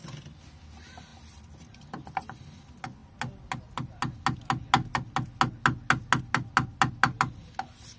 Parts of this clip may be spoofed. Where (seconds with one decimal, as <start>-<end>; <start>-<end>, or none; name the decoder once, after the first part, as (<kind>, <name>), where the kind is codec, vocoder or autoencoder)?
1.1-2.6 (vocoder, BigVGAN v2)

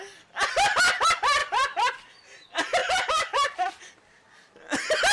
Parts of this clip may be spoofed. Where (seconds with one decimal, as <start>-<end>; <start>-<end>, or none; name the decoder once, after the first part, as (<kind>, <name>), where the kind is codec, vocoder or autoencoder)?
1.4-2.1 (vocoder, BigVGAN v2); 2.8-4.5